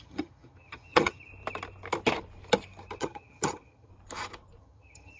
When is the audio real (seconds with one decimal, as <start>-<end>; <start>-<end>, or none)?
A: 1.3-3.0; 3.9-4.6